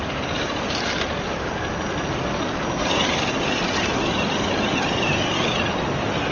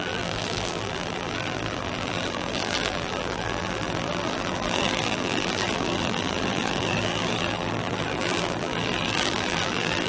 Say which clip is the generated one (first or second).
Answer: second